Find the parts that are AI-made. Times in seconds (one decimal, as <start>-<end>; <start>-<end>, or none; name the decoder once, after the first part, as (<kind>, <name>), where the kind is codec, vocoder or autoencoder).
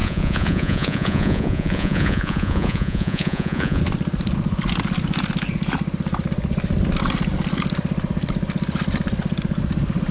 0.0-3.8 (vocoder, Vocos)